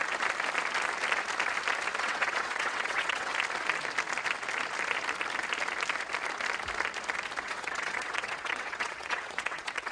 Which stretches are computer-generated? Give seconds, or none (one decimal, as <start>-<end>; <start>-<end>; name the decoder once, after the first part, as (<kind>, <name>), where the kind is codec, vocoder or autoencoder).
2.0-3.3 (vocoder, WaveNeXt); 7.4-9.9